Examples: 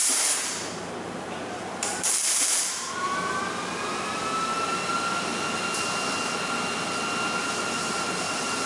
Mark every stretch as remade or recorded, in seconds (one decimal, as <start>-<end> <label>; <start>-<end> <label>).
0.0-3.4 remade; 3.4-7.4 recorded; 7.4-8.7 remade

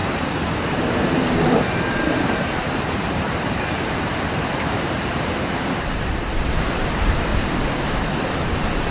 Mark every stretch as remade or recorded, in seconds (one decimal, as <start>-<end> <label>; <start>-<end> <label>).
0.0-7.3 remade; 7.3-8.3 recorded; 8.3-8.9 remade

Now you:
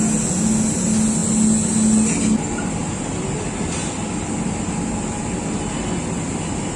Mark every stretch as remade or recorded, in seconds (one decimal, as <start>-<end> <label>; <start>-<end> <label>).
0.0-6.8 recorded

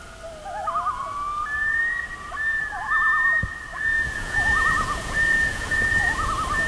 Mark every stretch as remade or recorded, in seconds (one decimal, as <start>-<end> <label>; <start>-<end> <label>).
0.0-3.7 recorded; 3.7-6.3 remade; 6.3-6.7 recorded

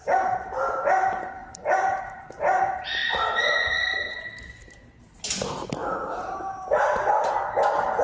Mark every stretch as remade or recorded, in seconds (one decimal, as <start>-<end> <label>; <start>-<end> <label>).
0.0-1.4 recorded; 1.4-2.6 remade; 2.6-8.0 recorded